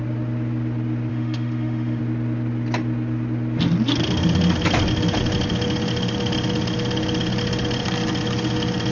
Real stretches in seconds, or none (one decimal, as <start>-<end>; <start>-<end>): 0.0-1.1; 2.0-8.9